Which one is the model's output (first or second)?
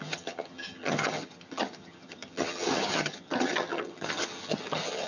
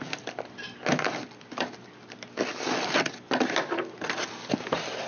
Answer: first